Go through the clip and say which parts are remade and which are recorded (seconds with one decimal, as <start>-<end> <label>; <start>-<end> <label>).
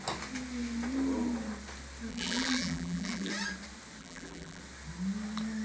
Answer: 0.0-2.1 recorded; 2.1-3.3 remade; 3.3-4.0 recorded; 4.0-4.6 remade; 4.6-5.6 recorded